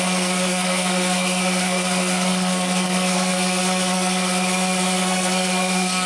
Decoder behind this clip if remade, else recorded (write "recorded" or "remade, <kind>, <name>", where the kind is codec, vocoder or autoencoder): remade, codec, SNAC